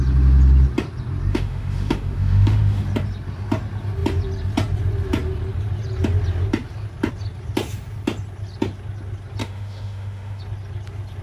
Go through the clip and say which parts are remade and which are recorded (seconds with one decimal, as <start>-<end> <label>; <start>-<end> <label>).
0.0-1.3 recorded; 1.3-2.8 remade; 2.8-9.4 recorded; 9.4-10.4 remade; 10.4-11.2 recorded